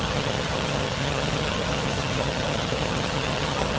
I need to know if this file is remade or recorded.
remade